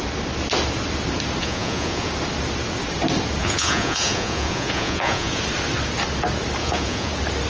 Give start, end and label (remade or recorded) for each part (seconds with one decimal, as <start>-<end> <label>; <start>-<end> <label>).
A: 0.0-1.4 recorded; 1.4-2.1 remade; 2.1-3.4 recorded; 3.4-5.4 remade; 5.4-6.6 recorded; 6.6-7.1 remade; 7.1-7.5 recorded